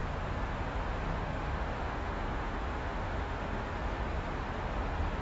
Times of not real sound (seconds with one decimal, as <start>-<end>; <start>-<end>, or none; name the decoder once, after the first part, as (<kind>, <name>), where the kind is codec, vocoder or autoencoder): 1.1-3.7 (autoencoder, DAC-VAE)